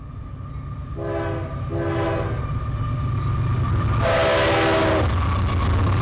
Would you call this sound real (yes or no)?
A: yes